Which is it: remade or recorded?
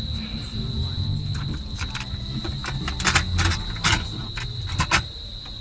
recorded